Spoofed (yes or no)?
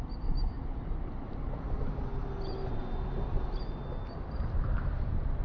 no